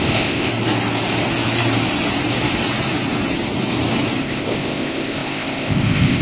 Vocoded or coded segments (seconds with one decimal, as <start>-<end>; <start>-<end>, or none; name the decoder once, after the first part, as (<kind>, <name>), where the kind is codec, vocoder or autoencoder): 0.0-0.5 (codec, ZipCodec); 4.2-6.2